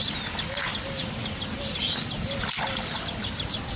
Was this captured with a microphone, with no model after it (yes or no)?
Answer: yes